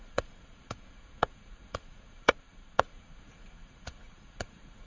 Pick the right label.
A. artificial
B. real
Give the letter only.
A